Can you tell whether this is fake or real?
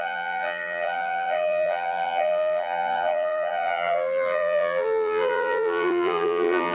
fake